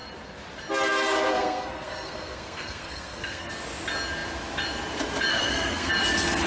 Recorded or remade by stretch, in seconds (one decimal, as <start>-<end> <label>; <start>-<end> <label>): 0.0-1.3 recorded; 1.3-3.5 remade; 3.5-5.3 recorded; 5.3-5.9 remade; 5.9-6.5 recorded